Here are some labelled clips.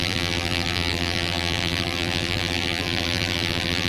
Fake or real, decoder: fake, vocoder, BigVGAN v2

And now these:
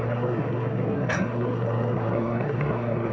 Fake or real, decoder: fake, codec, SNAC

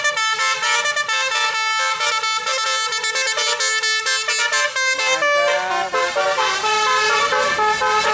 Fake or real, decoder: real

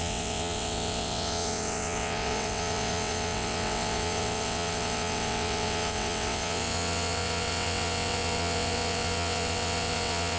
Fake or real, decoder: fake, vocoder, WaveNeXt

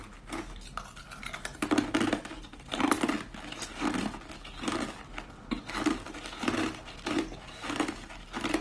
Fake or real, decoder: real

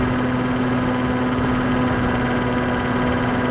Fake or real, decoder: real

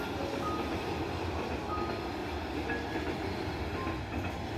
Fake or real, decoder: real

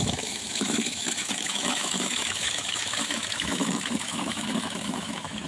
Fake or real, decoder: fake, autoencoder, DAC-VAE